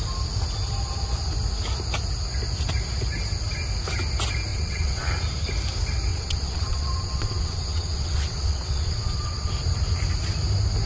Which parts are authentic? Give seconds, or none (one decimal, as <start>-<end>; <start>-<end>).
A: 0.0-4.5; 5.0-6.1; 9.5-10.9